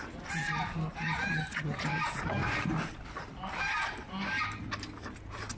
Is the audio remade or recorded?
recorded